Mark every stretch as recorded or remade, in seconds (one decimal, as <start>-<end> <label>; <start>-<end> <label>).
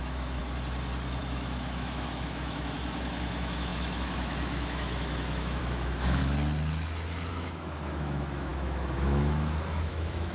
0.0-0.4 remade; 0.4-1.2 recorded; 1.2-6.2 remade; 6.2-7.3 recorded; 7.3-10.3 remade